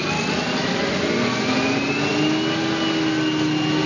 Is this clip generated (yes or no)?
no